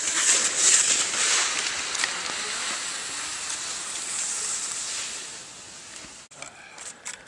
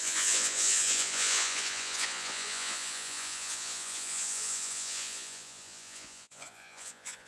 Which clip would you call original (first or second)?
first